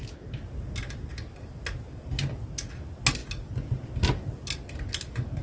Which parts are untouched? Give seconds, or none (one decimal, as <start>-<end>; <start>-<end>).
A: 0.0-5.4